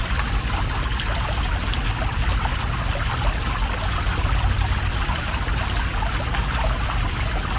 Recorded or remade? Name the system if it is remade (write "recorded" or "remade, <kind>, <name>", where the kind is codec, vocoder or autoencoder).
recorded